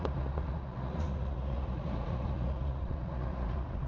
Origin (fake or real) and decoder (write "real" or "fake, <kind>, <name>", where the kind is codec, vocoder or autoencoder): fake, vocoder, Vocos